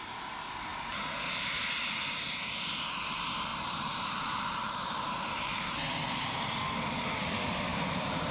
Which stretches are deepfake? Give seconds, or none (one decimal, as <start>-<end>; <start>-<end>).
0.7-1.6; 3.5-5.7; 7.7-8.3